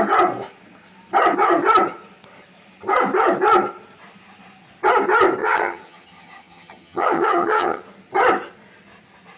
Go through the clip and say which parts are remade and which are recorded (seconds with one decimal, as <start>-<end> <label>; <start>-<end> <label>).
0.0-5.4 recorded; 5.4-7.8 remade; 7.8-9.4 recorded